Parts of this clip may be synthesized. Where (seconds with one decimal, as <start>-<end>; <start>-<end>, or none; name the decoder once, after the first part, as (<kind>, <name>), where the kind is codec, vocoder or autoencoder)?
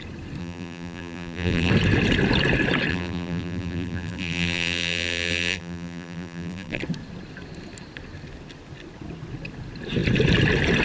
0.4-1.7 (vocoder, BigVGAN v2); 2.9-6.8